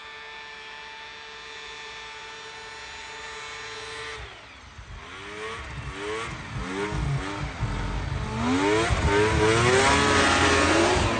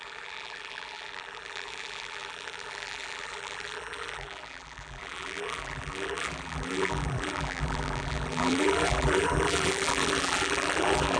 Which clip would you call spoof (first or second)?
second